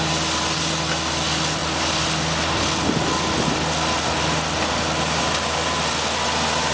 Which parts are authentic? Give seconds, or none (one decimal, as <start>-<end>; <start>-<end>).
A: 0.0-6.7

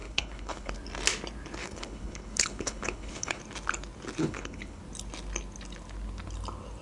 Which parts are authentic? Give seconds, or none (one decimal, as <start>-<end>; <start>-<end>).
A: 0.7-1.6; 3.4-4.2; 4.8-6.8